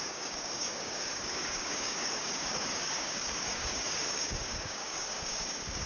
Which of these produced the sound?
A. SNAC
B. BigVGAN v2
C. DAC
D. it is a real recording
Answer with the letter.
C